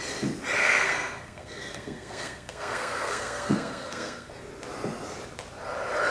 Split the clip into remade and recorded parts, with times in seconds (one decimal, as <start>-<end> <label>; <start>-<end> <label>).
0.0-0.6 recorded; 0.6-4.3 remade; 4.3-6.1 recorded

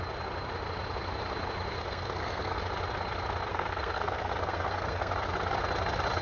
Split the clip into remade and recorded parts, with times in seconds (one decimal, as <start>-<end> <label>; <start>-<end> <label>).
0.0-1.8 recorded; 1.8-2.6 remade; 2.6-3.5 recorded; 3.5-5.1 remade; 5.1-6.2 recorded

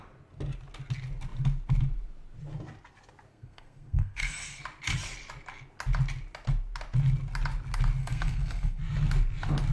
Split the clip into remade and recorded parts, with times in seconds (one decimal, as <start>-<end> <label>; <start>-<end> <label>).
0.0-3.3 recorded; 3.3-4.6 remade; 4.6-8.0 recorded; 8.0-8.8 remade; 8.8-9.7 recorded

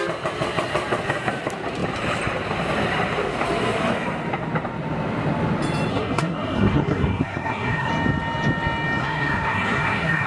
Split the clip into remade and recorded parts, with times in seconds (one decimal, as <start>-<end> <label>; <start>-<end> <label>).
0.0-5.9 recorded; 5.9-7.9 remade; 7.9-9.0 recorded; 9.0-10.3 remade

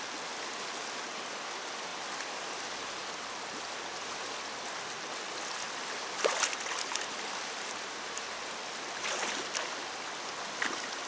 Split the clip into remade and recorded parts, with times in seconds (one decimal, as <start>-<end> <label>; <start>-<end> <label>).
0.0-11.1 recorded

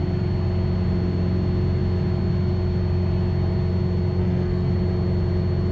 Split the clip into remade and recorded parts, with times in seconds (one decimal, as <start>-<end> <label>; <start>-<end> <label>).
0.0-4.2 recorded; 4.2-4.7 remade; 4.7-5.7 recorded